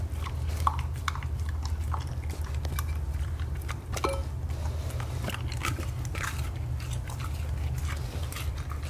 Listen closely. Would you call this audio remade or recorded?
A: recorded